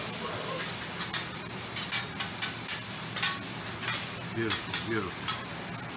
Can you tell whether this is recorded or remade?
recorded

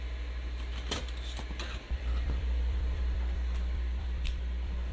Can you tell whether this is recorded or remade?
remade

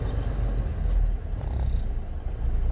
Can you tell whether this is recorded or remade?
recorded